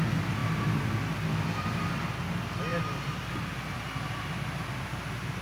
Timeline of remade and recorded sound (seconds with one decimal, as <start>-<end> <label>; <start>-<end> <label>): 0.0-2.7 recorded; 2.7-3.3 remade; 3.3-5.4 recorded